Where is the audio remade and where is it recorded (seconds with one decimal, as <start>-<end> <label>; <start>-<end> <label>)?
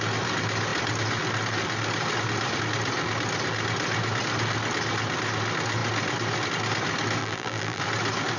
0.0-7.2 recorded; 7.2-7.8 remade; 7.8-8.4 recorded